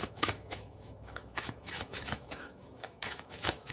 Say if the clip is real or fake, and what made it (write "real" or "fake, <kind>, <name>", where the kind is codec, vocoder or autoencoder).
fake, autoencoder, DAC-VAE